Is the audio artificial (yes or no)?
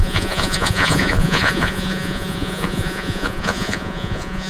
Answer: yes